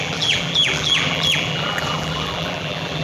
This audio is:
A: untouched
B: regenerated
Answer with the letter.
B